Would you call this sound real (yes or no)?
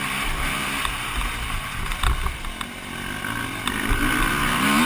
yes